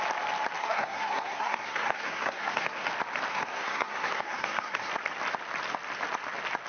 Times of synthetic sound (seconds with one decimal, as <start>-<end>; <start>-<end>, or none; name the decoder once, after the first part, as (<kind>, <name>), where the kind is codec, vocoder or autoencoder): 0.6-2.9 (codec, SNAC); 3.3-4.9